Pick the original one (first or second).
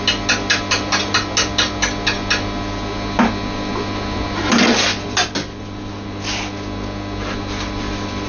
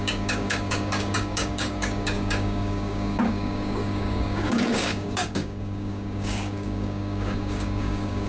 first